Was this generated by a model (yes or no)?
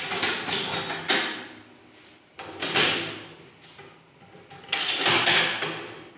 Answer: no